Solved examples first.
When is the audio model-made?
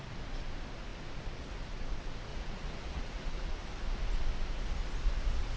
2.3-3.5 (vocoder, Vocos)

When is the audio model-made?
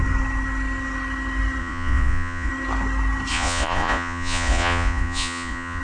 1.6-2.5 (vocoder, Vocos); 3.3-5.8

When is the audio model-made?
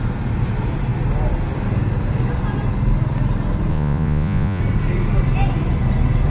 3.7-4.6 (vocoder, Vocos)